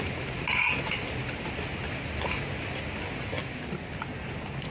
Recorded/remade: recorded